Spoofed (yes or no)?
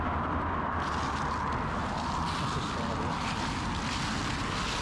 no